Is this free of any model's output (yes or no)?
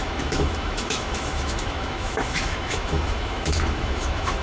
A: no